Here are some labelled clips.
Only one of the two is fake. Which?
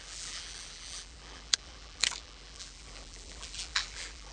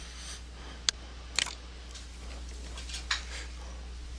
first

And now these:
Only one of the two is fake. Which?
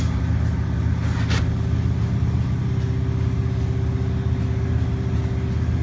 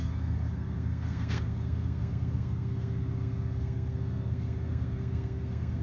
second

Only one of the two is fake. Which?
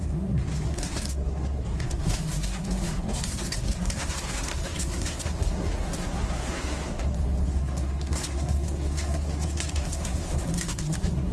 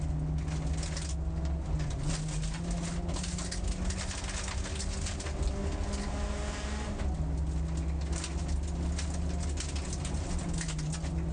first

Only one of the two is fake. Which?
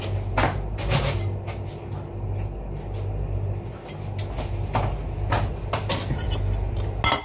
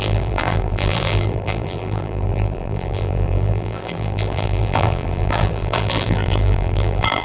second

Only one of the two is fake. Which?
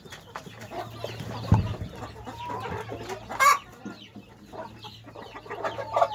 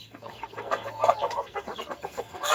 second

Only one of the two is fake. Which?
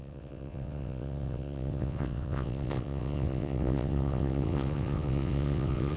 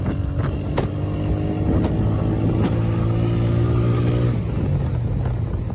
first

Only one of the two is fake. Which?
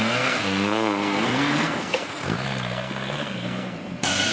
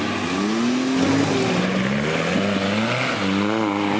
first